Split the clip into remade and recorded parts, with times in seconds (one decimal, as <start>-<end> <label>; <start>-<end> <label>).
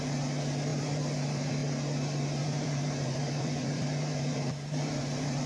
0.0-0.7 recorded; 0.7-1.5 remade; 1.5-2.4 recorded; 2.4-5.5 remade